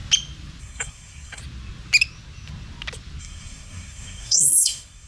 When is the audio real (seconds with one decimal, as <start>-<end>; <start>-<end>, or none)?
0.0-0.6; 1.4-3.2